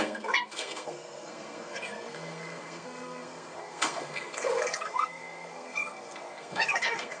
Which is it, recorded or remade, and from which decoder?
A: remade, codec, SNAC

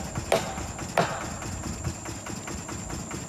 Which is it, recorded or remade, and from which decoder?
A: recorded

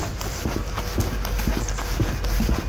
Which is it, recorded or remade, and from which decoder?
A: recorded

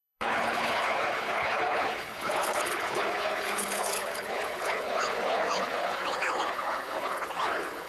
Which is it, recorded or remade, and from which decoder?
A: remade, codec, HILCodec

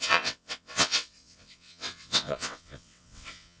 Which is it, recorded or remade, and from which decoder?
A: remade, vocoder, WaveNeXt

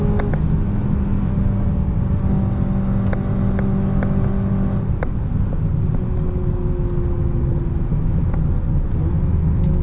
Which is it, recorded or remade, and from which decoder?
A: recorded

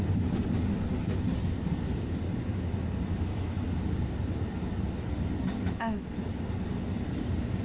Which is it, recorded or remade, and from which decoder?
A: recorded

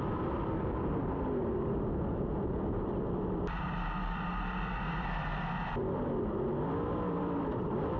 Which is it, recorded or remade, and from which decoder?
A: remade, vocoder, BigVGAN v2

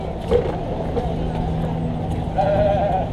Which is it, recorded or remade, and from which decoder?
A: recorded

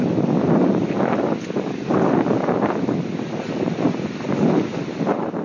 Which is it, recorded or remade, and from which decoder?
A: recorded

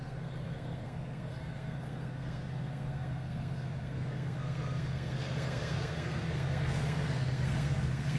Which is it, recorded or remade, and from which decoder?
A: remade, codec, SNAC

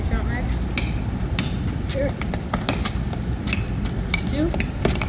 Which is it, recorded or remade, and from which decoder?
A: recorded